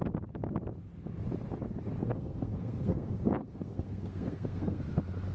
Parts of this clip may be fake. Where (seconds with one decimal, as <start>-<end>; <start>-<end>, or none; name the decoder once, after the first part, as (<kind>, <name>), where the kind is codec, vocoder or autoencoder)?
2.0-4.8 (codec, SNAC)